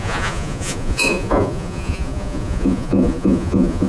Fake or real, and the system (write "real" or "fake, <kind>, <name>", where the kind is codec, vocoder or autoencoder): fake, vocoder, Vocos